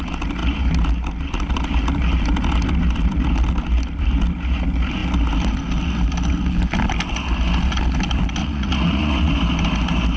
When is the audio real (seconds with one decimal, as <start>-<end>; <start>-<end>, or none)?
0.0-8.4; 9.3-10.2